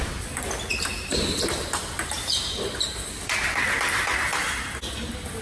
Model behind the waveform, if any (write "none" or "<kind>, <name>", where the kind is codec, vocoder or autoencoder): none